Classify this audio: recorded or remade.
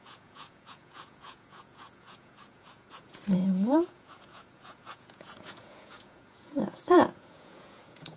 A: remade